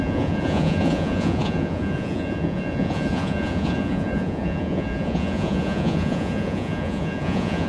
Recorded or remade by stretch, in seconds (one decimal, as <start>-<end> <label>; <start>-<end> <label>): 0.0-7.7 remade